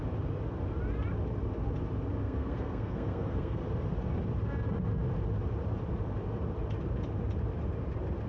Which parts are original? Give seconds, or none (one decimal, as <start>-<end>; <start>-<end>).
0.0-2.2; 3.6-8.3